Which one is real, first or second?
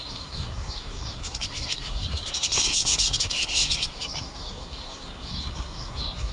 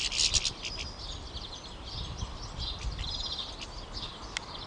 second